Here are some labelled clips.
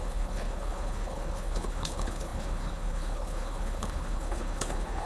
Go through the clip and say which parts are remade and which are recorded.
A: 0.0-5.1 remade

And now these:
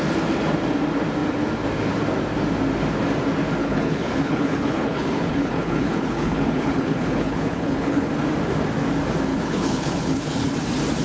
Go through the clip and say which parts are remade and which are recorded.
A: 0.0-3.6 recorded; 3.6-8.1 remade; 8.1-9.3 recorded; 9.3-10.5 remade; 10.5-11.0 recorded